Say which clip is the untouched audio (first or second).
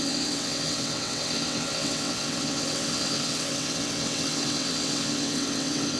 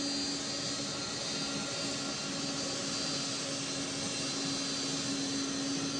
second